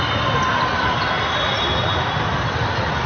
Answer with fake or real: real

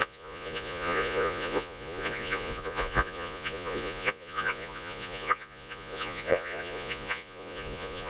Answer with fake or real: fake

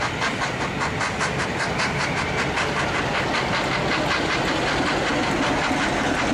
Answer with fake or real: real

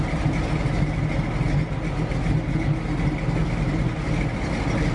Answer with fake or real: real